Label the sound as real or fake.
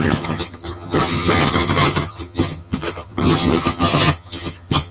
fake